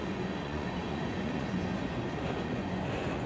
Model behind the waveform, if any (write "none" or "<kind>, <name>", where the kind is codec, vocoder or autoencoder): vocoder, Vocos